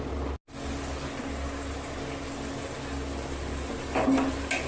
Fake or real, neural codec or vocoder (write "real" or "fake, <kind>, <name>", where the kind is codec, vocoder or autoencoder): real